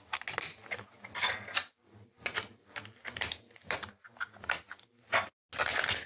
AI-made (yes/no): no